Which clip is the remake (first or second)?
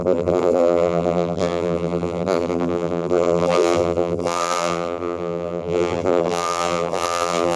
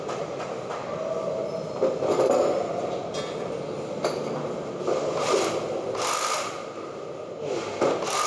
first